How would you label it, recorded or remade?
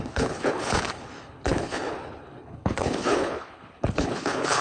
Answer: remade